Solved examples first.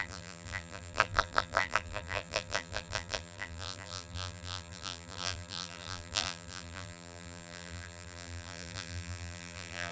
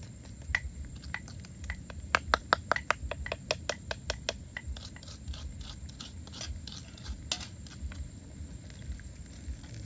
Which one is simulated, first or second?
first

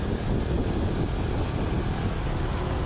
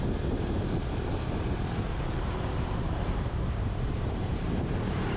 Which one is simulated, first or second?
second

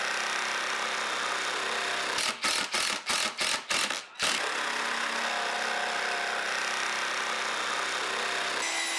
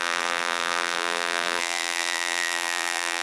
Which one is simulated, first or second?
second